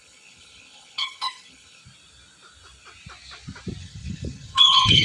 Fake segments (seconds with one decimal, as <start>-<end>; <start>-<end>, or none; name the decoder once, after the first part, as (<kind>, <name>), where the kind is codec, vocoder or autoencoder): 0.0-1.8 (codec, HILCodec); 3.8-5.0